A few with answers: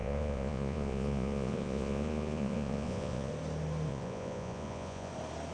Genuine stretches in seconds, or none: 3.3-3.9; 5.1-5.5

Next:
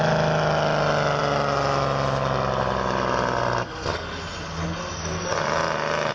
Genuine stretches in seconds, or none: 0.0-6.1